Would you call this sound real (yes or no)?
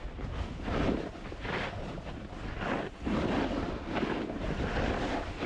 yes